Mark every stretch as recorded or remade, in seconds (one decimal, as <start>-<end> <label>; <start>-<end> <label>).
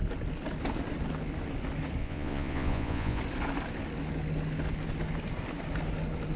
0.0-2.0 recorded; 2.0-3.2 remade; 3.2-6.4 recorded